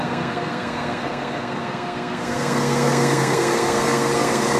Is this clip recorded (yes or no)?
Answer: no